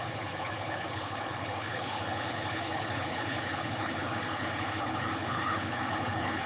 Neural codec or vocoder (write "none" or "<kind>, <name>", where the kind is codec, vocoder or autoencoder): codec, HILCodec